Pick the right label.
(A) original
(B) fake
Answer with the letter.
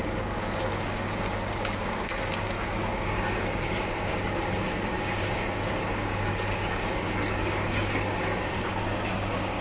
B